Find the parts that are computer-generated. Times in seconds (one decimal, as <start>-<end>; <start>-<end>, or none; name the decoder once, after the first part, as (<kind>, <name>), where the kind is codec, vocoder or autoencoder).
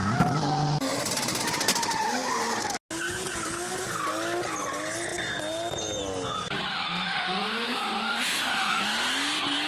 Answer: 6.7-8.8 (autoencoder, DAC-VAE)